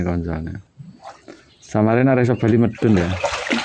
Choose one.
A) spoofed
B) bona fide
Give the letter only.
A